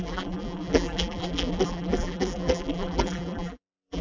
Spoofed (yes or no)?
yes